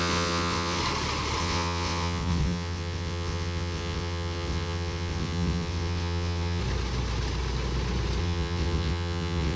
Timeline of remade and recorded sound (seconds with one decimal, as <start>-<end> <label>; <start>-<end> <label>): 0.0-0.8 remade; 0.8-1.4 recorded; 1.4-6.6 remade; 6.6-8.2 recorded; 8.2-9.6 remade

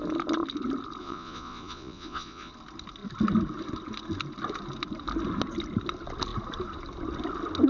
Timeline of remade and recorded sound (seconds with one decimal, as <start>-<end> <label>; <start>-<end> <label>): 0.0-1.0 recorded; 1.0-2.5 remade; 2.5-7.7 recorded

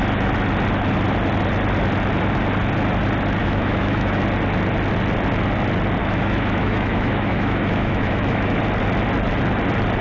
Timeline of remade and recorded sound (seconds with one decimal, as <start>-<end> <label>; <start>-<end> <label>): 0.0-3.4 recorded; 3.4-4.2 remade; 4.2-6.0 recorded; 6.0-8.6 remade; 8.6-10.0 recorded

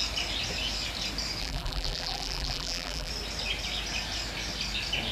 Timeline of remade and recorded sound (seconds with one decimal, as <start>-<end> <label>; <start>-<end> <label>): 0.0-1.4 recorded; 1.4-3.1 remade; 3.1-5.1 recorded

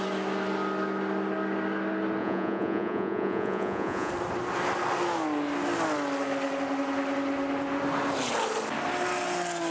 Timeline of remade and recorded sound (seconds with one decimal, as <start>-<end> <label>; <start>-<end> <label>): 0.0-2.2 recorded; 2.2-4.1 remade; 4.1-9.7 recorded

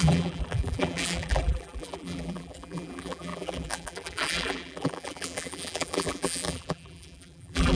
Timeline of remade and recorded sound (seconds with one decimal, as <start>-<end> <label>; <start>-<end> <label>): 0.0-7.8 remade

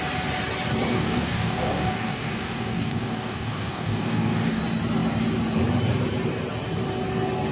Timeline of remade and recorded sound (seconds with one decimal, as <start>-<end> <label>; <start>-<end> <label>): 0.0-0.9 recorded; 0.9-4.6 remade; 4.6-7.5 recorded